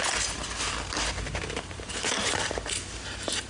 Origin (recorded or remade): recorded